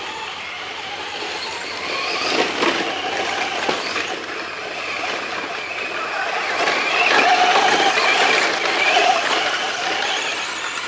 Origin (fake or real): real